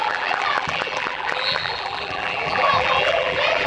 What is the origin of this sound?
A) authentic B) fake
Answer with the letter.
B